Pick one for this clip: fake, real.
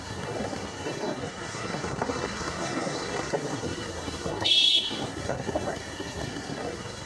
fake